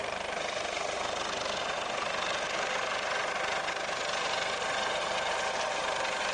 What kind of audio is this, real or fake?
real